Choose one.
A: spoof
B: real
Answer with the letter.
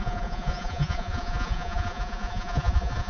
A